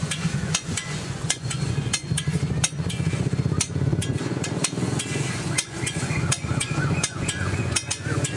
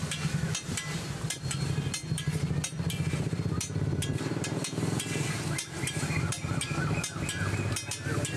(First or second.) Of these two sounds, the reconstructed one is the first